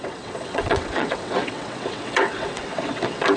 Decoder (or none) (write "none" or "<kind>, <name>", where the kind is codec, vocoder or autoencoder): vocoder, WaveNeXt